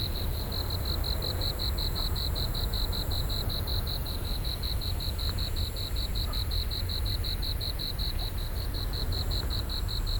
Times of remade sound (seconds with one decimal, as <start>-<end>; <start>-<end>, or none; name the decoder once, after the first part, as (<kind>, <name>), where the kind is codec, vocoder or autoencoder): 0.0-0.5 (vocoder, Vocos); 1.3-10.2